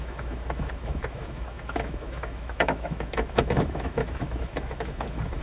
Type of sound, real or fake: fake